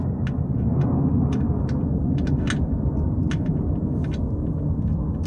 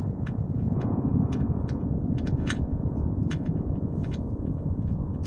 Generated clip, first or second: second